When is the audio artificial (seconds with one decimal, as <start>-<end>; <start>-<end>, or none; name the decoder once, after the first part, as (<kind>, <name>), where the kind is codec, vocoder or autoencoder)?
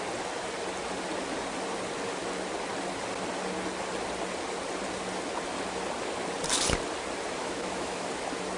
7.4-8.1 (autoencoder, DAC-VAE)